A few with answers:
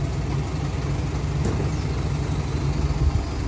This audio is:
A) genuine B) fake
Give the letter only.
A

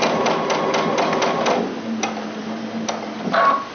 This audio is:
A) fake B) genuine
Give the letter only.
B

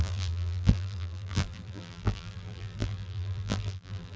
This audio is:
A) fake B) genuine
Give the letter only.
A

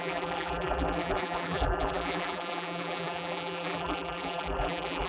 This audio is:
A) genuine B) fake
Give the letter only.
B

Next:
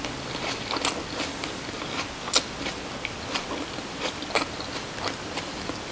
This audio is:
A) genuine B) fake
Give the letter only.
A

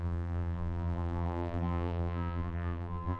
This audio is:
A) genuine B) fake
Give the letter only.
B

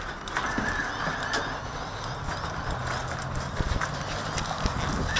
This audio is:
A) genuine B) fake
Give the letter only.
A